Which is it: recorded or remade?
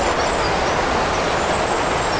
recorded